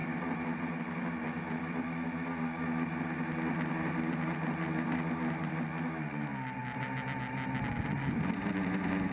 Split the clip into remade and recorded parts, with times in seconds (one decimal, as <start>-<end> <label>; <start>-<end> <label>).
0.0-9.1 recorded